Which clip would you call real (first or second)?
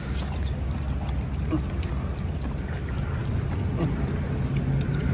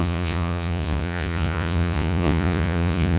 first